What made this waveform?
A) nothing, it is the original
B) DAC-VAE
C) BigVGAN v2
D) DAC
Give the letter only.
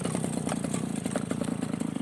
A